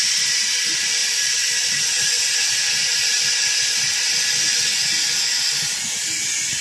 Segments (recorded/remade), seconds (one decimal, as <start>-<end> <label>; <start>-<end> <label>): 0.0-1.0 recorded; 1.0-1.8 remade; 1.8-6.6 recorded